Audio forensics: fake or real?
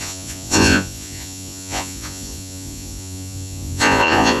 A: fake